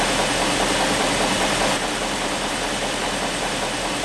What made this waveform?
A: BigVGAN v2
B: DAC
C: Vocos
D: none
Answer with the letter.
A